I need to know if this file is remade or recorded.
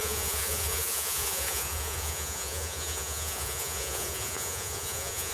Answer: remade